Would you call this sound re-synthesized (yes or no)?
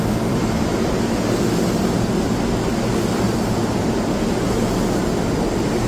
no